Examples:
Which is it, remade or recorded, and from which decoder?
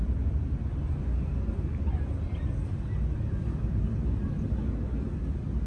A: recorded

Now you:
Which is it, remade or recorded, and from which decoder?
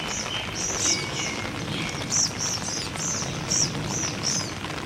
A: recorded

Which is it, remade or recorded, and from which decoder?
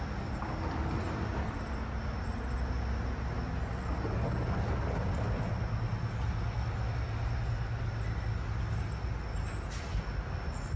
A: recorded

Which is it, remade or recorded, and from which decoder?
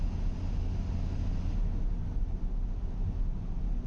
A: recorded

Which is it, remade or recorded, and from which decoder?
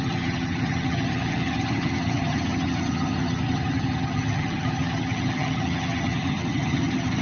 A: remade, vocoder, HiFi-GAN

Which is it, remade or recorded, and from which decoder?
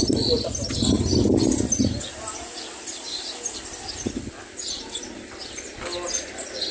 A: recorded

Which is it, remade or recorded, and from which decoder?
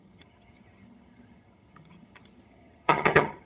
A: remade, vocoder, HiFi-GAN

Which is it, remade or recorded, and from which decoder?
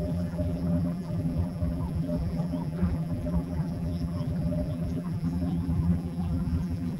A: remade, vocoder, BigVGAN v2